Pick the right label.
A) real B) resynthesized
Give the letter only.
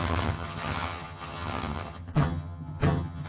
B